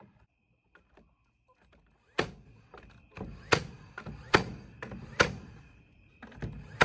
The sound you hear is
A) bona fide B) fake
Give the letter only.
A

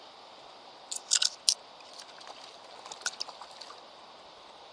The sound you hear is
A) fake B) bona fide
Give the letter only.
B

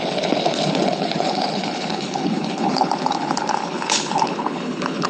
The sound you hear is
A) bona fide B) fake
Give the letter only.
B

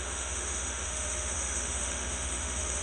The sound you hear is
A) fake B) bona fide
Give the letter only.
A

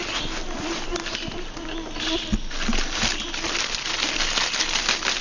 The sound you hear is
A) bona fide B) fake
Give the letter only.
A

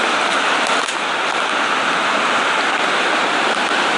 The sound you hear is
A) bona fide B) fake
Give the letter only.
A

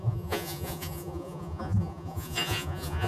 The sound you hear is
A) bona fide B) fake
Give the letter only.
B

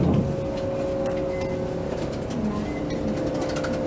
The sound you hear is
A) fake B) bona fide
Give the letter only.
B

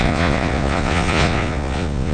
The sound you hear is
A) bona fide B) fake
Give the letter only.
B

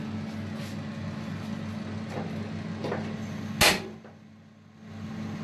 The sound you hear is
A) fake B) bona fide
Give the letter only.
B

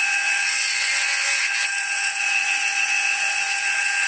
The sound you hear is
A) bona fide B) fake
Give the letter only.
B